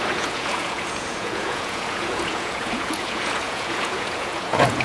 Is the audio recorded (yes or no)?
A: no